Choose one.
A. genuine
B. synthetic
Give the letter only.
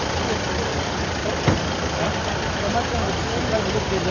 B